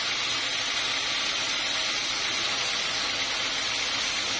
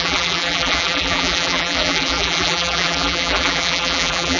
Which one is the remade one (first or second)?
second